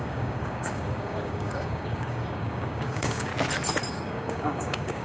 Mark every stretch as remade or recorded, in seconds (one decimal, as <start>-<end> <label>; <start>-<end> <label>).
0.0-3.3 remade; 3.3-3.9 recorded; 3.9-5.0 remade